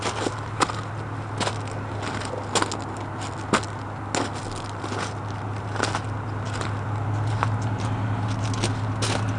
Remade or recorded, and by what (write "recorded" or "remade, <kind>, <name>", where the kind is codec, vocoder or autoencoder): recorded